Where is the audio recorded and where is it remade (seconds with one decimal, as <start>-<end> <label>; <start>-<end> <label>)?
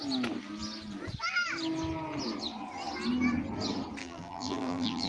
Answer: 0.0-4.0 recorded; 4.0-5.1 remade